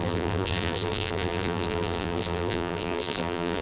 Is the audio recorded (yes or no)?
no